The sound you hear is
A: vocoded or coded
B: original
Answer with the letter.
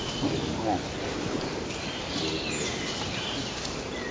B